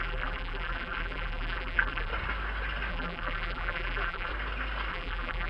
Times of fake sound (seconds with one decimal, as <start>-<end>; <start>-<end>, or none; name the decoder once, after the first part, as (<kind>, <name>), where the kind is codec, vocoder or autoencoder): 0.0-2.1 (vocoder, BigVGAN v2); 2.9-4.3; 4.9-5.5